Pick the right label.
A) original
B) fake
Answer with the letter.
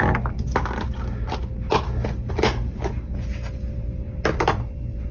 A